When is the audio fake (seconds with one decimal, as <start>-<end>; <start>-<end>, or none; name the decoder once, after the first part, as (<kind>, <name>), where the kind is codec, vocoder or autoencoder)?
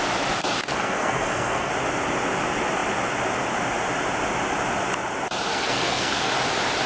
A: 0.7-1.7 (codec, SNAC); 5.5-6.3